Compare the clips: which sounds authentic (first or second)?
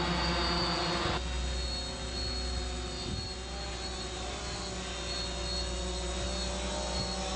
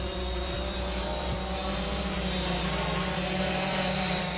first